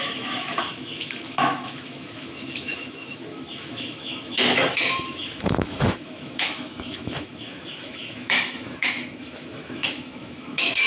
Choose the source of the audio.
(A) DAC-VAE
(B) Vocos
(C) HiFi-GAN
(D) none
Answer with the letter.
A